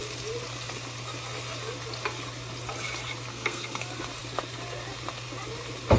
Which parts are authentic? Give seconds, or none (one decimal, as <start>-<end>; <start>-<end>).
0.0-3.3; 3.8-6.0